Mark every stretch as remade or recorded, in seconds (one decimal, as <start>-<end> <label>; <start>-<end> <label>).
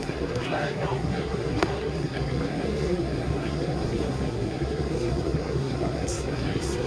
0.0-6.9 remade